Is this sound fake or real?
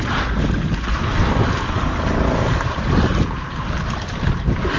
real